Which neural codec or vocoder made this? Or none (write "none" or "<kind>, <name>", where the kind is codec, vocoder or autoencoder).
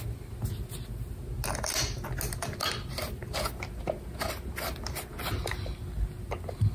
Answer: none